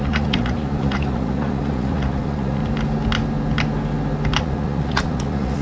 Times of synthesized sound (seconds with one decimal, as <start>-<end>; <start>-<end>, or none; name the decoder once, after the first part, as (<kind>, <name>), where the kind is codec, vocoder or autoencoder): 0.0-2.6 (vocoder, Vocos); 4.4-5.6